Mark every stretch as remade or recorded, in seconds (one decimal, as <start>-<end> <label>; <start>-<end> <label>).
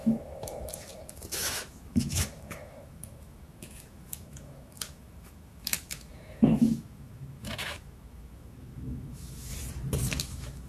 0.0-9.5 remade; 9.5-10.2 recorded; 10.2-10.7 remade